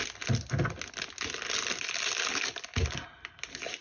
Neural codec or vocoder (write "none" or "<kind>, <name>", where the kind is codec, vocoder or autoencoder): none